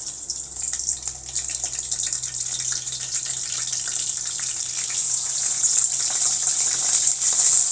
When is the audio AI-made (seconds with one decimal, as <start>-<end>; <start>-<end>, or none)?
5.0-5.8